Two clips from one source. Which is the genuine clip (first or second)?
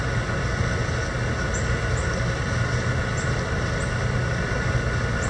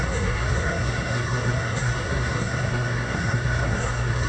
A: first